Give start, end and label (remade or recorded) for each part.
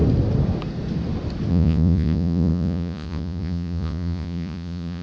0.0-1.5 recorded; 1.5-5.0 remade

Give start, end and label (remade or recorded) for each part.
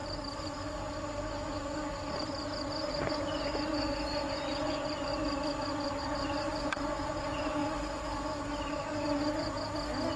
0.0-3.1 recorded; 3.1-5.1 remade; 5.1-6.0 recorded; 6.0-7.6 remade; 7.6-10.2 recorded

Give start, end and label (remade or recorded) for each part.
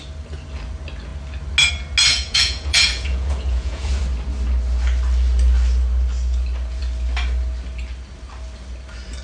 0.0-2.1 recorded; 2.1-4.0 remade; 4.0-9.2 recorded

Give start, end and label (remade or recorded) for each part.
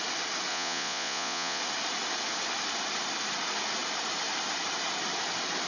0.0-0.5 recorded; 0.5-1.6 remade; 1.6-5.7 recorded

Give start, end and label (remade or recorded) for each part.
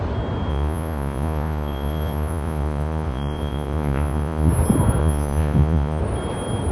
0.0-0.5 recorded; 0.5-4.5 remade; 4.5-5.0 recorded; 5.0-6.0 remade; 6.0-6.7 recorded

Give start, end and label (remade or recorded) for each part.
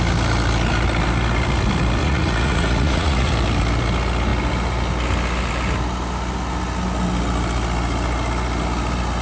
0.0-2.0 recorded; 2.0-3.3 remade; 3.3-9.2 recorded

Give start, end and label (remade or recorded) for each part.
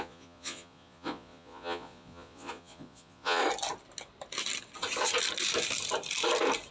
0.0-3.4 remade; 3.4-6.7 recorded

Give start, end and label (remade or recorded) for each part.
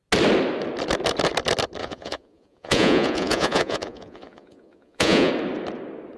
0.0-1.8 recorded; 1.8-5.3 remade; 5.3-6.2 recorded